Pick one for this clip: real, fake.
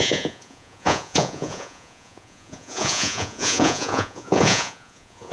fake